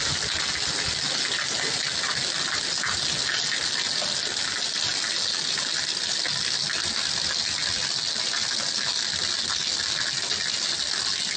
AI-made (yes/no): no